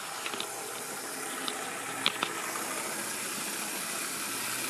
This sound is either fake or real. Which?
real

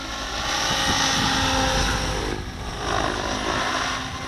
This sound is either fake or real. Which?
real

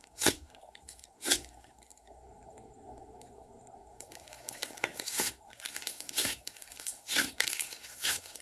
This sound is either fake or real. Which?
fake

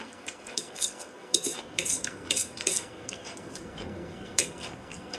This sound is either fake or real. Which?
fake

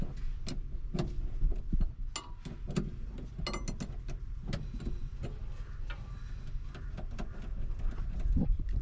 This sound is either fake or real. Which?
real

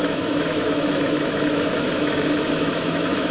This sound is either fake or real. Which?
fake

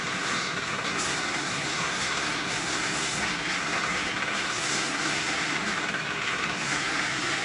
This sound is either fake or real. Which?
fake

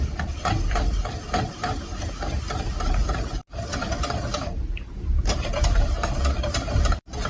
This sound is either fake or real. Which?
fake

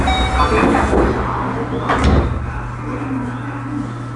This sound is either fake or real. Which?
real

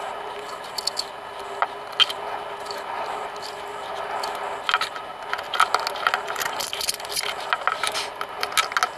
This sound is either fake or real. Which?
real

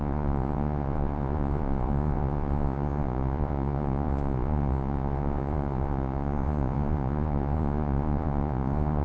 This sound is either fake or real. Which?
fake